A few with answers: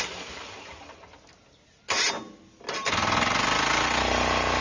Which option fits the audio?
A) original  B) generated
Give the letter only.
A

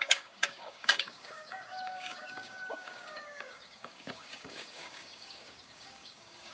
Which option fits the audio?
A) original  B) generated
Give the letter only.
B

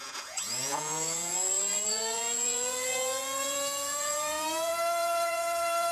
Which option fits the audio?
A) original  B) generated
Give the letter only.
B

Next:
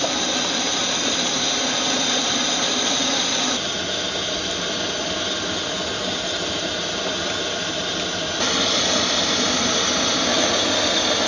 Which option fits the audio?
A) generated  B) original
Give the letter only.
B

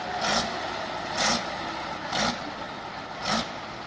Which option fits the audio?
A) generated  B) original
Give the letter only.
B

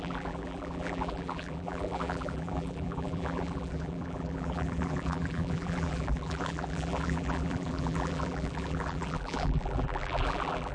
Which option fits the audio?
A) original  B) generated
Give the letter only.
B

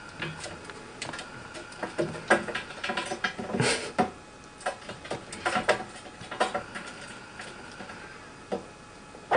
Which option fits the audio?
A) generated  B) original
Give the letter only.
B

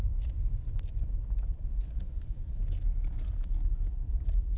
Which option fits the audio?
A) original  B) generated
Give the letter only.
B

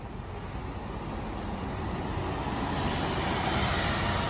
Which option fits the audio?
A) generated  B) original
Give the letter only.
B